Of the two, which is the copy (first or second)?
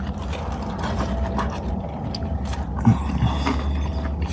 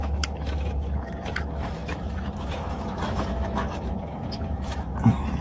second